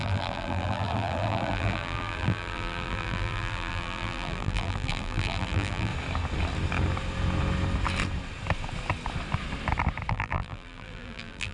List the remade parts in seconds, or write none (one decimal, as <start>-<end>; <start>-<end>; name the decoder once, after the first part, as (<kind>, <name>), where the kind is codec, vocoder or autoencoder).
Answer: 0.0-5.9 (vocoder, BigVGAN v2); 10.1-11.5